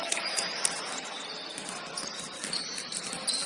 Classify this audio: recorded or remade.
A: recorded